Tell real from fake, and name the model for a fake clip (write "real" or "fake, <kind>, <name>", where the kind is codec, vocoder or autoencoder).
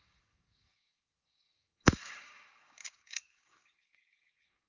fake, codec, DAC